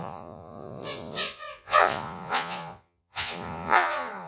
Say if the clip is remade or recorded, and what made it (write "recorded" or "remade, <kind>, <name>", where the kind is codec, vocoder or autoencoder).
remade, vocoder, Vocos